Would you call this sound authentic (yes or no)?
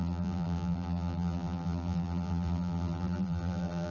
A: no